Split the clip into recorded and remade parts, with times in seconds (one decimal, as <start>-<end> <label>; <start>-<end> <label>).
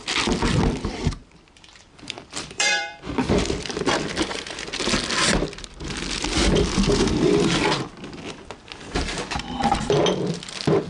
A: 0.0-1.2 recorded; 1.2-4.1 remade; 4.1-10.9 recorded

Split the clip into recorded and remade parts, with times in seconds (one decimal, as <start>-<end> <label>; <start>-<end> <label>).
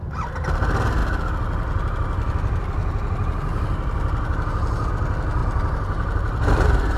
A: 0.0-5.4 recorded; 5.4-7.0 remade